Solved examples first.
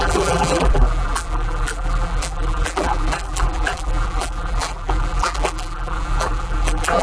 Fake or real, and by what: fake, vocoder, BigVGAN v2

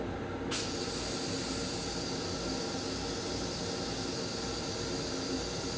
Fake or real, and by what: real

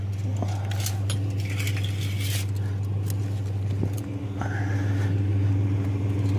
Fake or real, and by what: real